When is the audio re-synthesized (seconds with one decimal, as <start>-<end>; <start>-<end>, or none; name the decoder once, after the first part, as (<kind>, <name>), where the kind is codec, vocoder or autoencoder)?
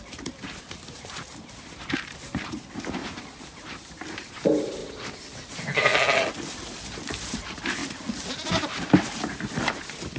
0.0-4.8 (vocoder, BigVGAN v2); 5.5-5.9; 7.3-7.8; 8.5-10.2